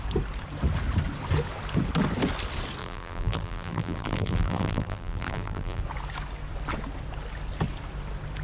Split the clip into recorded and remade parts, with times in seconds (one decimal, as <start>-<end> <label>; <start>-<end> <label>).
0.0-2.8 recorded; 2.8-5.8 remade; 5.8-8.4 recorded